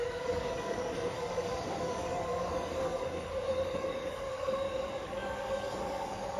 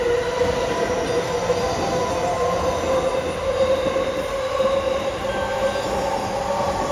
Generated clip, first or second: first